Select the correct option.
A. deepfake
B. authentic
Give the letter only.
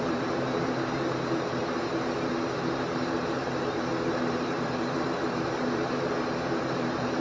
A